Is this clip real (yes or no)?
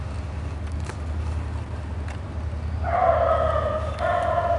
yes